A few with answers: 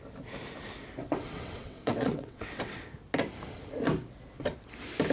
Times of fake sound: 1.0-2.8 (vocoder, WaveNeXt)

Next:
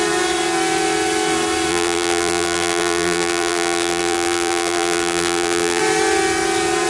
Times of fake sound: 1.7-5.8 (vocoder, BigVGAN v2)

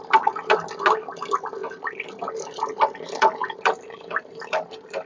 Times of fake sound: 3.4-5.1 (vocoder, BigVGAN v2)